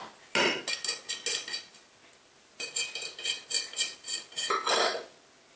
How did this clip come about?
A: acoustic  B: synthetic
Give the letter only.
A